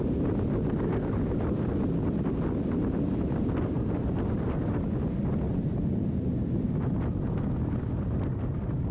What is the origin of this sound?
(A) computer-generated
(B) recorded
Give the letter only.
B